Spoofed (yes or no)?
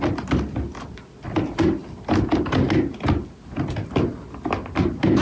no